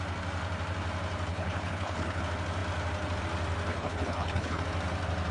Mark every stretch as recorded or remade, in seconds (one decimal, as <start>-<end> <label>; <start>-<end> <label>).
0.0-1.3 recorded; 1.3-2.2 remade; 2.2-3.7 recorded; 3.7-4.6 remade; 4.6-5.3 recorded